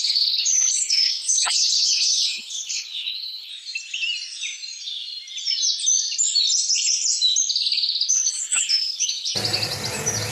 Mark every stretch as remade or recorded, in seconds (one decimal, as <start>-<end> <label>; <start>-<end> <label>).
0.0-3.5 remade; 3.5-8.1 recorded; 8.1-9.3 remade; 9.3-10.3 recorded